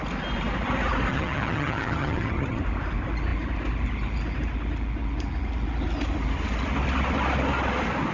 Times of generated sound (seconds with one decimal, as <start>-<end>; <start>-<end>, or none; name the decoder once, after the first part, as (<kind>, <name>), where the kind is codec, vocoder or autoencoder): 1.1-2.6 (vocoder, HiFi-GAN)